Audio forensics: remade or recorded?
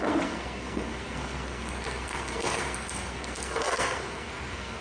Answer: remade